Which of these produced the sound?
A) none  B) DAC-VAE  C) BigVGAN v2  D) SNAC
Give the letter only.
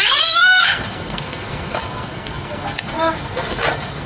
D